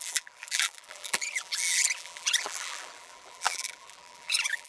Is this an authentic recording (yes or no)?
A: no